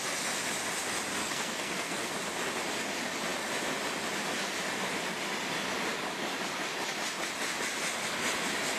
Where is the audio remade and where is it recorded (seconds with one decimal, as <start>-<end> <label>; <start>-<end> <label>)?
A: 0.0-1.2 recorded; 1.2-2.1 remade; 2.1-8.8 recorded